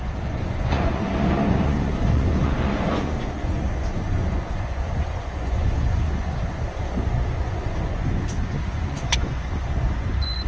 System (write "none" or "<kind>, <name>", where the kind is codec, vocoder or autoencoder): vocoder, Vocos